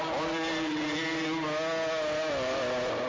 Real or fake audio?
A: real